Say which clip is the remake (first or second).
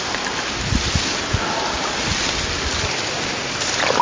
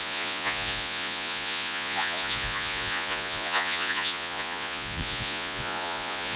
second